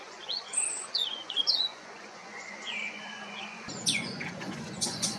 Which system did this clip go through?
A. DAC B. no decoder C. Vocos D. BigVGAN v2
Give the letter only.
C